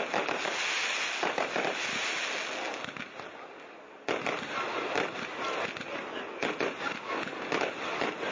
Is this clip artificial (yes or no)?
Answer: no